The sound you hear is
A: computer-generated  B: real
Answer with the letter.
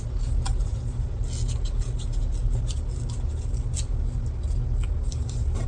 B